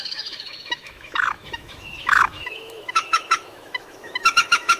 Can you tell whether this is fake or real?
fake